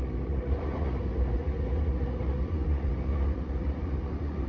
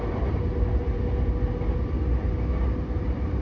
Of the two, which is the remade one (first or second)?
first